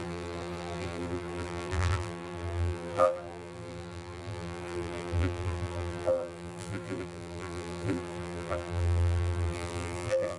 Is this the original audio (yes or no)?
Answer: no